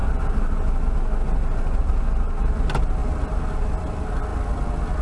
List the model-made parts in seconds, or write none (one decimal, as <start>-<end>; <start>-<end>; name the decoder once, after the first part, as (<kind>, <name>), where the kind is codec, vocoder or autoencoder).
none